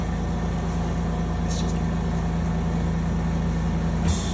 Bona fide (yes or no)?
yes